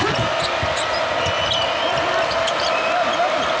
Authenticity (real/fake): real